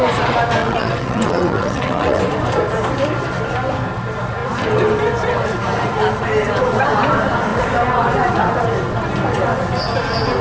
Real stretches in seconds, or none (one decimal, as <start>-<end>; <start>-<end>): 0.0-0.6; 2.2-10.4